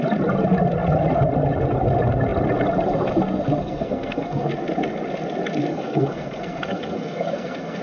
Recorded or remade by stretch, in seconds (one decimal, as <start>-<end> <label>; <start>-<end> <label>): 0.0-3.6 recorded; 3.6-4.5 remade; 4.5-5.7 recorded; 5.7-7.8 remade